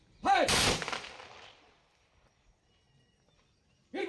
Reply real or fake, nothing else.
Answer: real